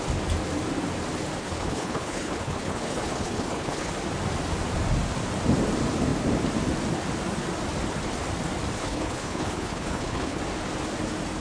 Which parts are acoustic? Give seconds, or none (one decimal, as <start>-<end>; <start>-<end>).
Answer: 0.0-1.4; 3.9-8.8; 10.4-11.4